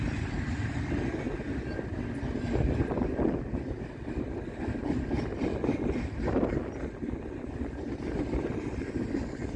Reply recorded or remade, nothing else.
recorded